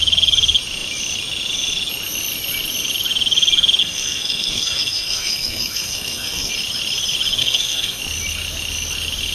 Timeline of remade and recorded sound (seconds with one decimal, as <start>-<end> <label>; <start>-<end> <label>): 0.0-3.8 recorded; 3.8-6.5 remade; 6.5-7.4 recorded; 7.4-8.0 remade; 8.0-9.3 recorded